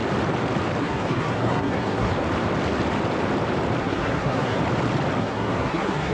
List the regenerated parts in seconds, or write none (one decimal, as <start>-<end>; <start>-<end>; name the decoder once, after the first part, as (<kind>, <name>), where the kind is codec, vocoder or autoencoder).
0.8-2.1 (codec, SNAC); 3.8-4.6; 5.2-6.1